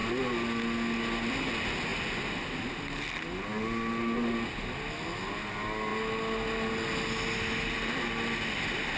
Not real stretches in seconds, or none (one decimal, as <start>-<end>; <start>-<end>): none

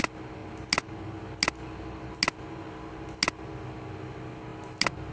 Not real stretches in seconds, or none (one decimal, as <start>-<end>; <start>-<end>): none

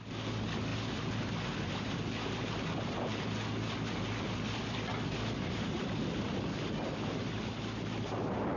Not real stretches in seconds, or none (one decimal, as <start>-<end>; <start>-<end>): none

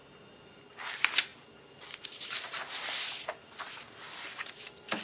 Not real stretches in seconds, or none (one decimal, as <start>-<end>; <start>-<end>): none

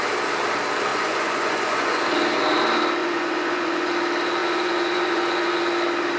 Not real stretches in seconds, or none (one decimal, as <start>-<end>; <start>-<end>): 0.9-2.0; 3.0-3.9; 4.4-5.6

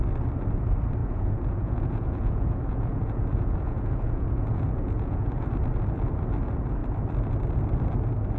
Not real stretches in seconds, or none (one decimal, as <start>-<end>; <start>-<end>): 1.0-5.3

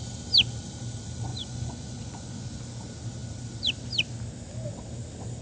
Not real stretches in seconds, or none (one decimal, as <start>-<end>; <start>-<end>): 1.3-2.6